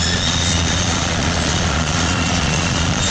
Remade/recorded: remade